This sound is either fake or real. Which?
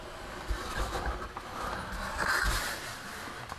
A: real